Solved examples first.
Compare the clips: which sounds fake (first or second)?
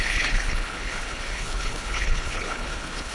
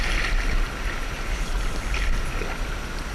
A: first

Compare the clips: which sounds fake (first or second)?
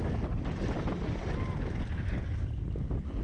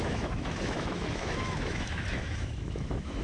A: second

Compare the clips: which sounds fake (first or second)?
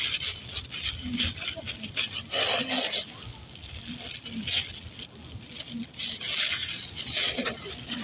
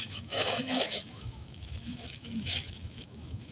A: second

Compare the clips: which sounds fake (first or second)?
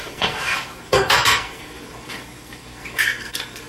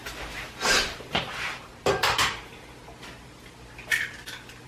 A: first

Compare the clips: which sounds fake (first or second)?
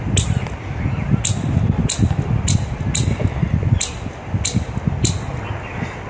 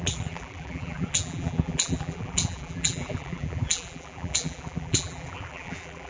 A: second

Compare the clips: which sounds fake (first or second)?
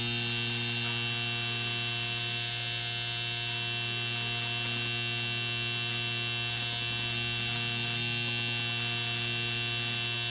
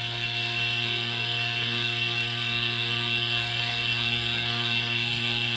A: second